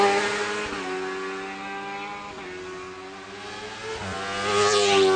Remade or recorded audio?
recorded